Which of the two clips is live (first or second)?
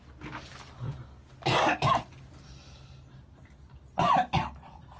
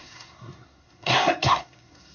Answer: first